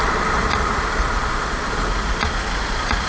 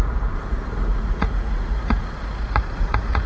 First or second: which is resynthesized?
second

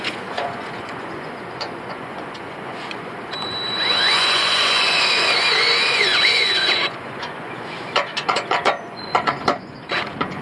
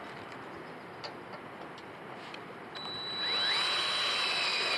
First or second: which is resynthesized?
first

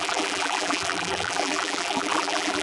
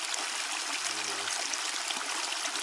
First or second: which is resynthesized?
first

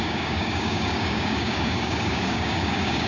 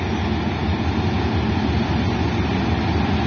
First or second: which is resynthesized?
first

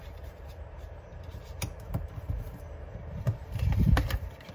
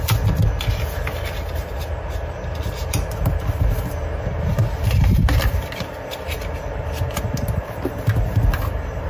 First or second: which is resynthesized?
first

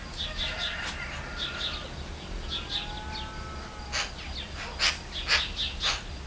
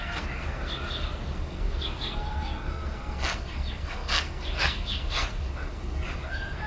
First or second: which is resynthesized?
second